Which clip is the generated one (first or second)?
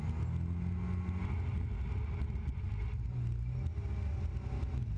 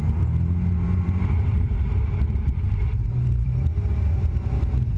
second